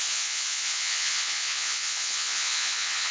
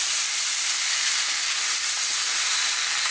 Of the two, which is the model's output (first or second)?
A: first